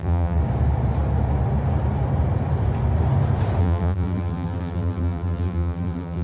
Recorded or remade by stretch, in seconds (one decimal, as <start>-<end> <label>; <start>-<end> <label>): 0.0-0.4 remade; 0.4-3.6 recorded; 3.6-6.2 remade